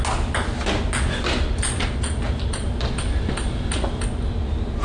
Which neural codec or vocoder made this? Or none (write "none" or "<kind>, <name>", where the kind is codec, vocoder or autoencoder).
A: none